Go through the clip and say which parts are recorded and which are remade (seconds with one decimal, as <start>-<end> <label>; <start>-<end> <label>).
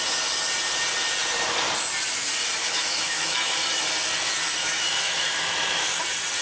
0.0-2.6 recorded; 2.6-3.9 remade; 3.9-4.6 recorded; 4.6-6.0 remade; 6.0-6.4 recorded